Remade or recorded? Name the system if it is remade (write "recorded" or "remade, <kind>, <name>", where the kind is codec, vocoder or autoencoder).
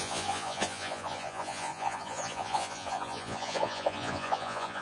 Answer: remade, vocoder, Vocos